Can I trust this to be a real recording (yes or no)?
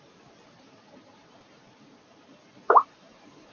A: no